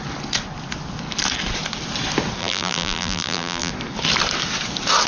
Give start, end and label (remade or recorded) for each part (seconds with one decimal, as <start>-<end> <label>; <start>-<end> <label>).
0.0-2.4 recorded; 2.4-3.7 remade; 3.7-5.1 recorded